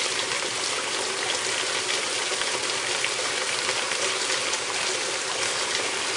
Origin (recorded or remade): recorded